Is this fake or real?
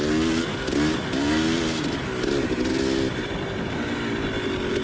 real